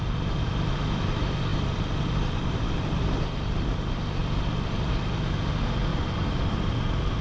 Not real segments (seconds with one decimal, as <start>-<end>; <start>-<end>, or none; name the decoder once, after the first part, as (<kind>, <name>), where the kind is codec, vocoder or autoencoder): 1.5-2.9 (vocoder, BigVGAN v2); 5.9-6.7